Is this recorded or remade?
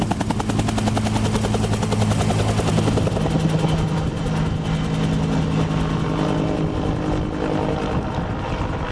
recorded